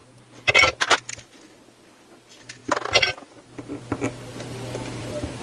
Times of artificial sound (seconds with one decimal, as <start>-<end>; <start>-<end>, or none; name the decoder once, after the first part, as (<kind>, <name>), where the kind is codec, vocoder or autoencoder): 0.0-0.5 (vocoder, BigVGAN v2); 4.3-5.4